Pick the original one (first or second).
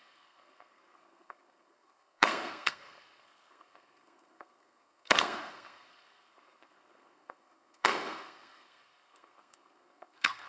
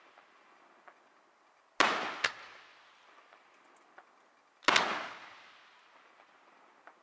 second